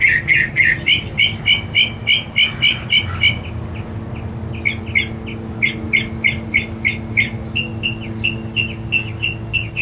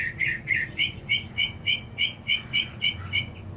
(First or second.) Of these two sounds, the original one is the first